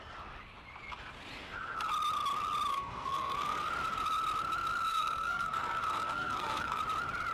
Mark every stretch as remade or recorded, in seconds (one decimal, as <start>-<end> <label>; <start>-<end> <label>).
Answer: 0.0-2.7 recorded; 2.7-3.7 remade; 3.7-4.9 recorded; 4.9-6.8 remade; 6.8-7.3 recorded